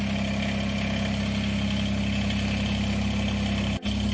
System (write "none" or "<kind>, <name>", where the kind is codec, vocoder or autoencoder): none